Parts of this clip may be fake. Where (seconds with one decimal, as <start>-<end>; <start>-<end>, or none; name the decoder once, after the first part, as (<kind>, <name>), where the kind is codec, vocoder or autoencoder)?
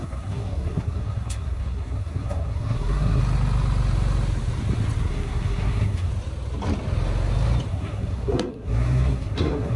0.0-3.2 (codec, SNAC); 5.0-6.1; 7.7-9.8